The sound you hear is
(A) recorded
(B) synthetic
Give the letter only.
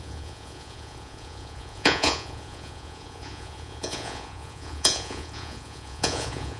B